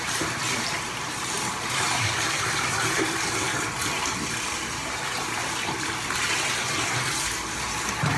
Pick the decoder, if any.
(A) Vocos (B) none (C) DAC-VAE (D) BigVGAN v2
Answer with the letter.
D